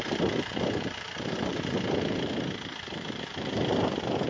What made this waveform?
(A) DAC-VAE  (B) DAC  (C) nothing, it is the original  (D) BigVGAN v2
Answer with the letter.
D